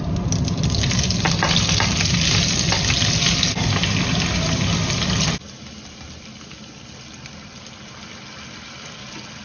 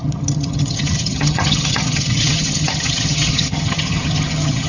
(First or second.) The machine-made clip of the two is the second